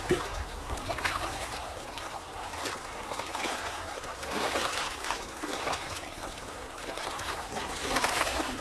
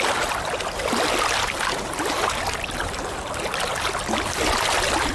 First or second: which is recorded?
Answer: second